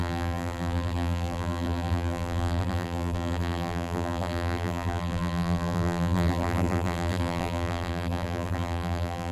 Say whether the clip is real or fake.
fake